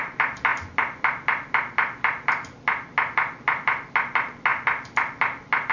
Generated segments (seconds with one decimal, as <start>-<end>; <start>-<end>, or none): none